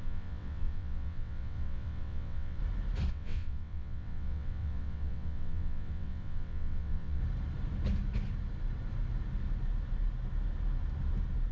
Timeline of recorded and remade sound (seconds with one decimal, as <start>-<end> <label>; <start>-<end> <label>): 0.0-2.6 remade; 2.6-3.1 recorded; 3.1-7.2 remade; 7.2-11.5 recorded